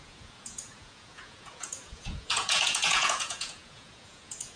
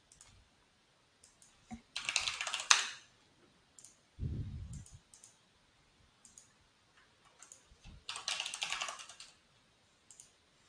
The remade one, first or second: first